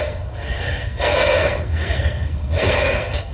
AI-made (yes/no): yes